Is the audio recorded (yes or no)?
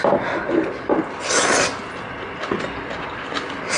yes